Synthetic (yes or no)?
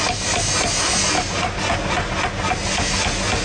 no